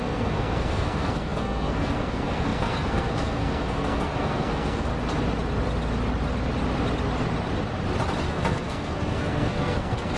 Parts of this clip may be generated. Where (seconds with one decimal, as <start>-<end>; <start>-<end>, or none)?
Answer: 0.0-4.9; 8.3-10.2